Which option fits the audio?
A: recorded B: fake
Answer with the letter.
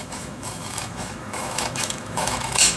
B